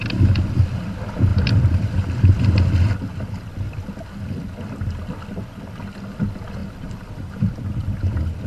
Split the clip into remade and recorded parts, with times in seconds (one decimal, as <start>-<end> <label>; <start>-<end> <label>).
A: 0.0-1.3 recorded; 1.3-2.4 remade; 2.4-6.6 recorded; 6.6-8.5 remade